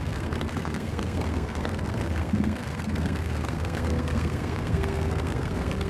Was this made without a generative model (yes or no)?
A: no